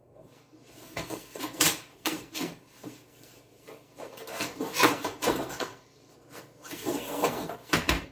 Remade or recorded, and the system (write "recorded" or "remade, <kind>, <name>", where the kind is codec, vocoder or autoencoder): remade, codec, SNAC